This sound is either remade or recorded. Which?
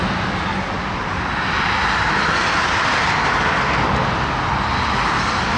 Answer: recorded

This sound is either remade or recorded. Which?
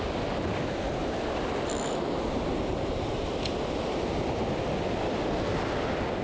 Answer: recorded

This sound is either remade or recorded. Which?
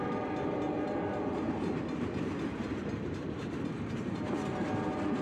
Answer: remade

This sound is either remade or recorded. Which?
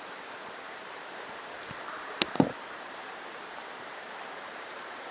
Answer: remade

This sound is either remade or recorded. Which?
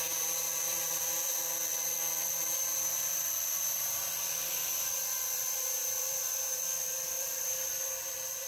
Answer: remade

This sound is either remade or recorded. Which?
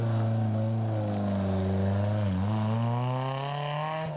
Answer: recorded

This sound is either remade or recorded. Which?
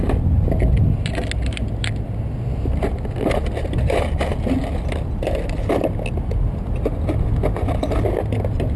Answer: recorded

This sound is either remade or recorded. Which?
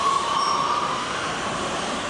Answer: remade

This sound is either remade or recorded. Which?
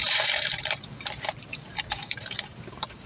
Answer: remade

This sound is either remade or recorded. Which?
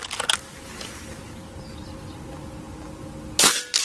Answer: recorded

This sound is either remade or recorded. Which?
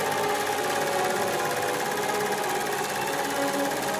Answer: recorded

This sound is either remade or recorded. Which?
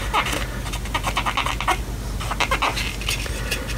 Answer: recorded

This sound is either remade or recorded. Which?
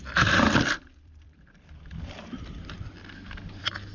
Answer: remade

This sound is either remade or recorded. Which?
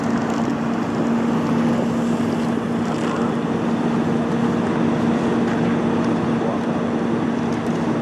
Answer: recorded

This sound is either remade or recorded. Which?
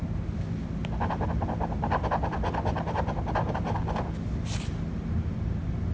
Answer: recorded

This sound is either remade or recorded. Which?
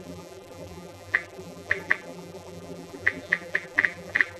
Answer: remade